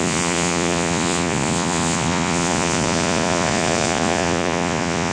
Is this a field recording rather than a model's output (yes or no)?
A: no